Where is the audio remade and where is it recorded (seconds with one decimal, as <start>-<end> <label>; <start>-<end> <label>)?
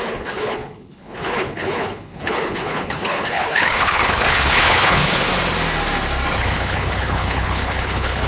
0.0-5.3 remade; 5.3-6.4 recorded; 6.4-8.3 remade